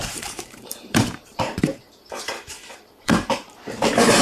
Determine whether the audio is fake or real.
fake